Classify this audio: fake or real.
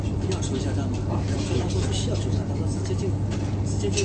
real